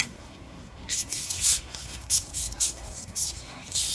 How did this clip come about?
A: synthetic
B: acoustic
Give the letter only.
A